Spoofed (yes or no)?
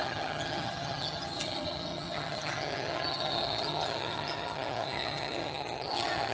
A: yes